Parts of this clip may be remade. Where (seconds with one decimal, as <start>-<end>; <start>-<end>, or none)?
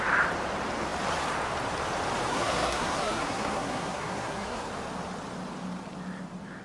2.3-4.7